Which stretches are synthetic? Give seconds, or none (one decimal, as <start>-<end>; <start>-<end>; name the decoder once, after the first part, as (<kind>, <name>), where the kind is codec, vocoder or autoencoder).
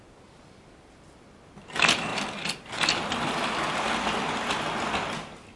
none